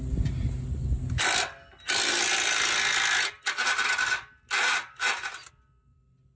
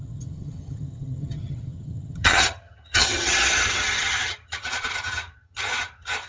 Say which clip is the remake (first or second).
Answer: second